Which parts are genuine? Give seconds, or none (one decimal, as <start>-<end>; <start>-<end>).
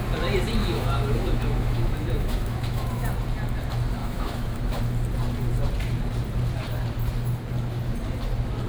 0.0-0.6; 3.1-4.0; 4.8-8.7